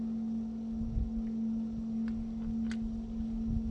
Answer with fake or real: real